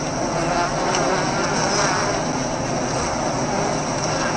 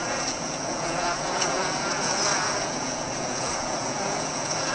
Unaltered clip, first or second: first